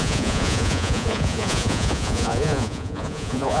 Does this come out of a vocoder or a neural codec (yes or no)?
yes